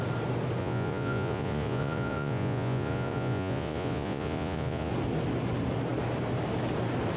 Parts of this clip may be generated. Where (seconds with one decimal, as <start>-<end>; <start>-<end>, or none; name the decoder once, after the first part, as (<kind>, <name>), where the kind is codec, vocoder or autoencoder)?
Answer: 0.6-4.9 (vocoder, Vocos)